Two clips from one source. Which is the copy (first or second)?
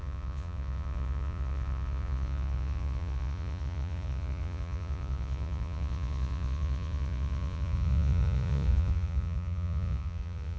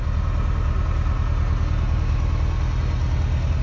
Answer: first